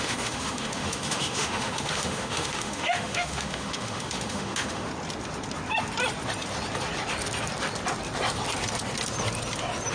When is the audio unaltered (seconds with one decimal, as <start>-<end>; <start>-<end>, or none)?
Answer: 4.9-9.9